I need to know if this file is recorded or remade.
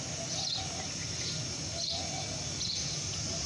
recorded